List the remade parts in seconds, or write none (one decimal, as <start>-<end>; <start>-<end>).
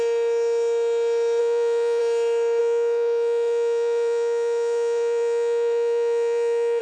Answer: 1.4-2.0; 2.6-6.8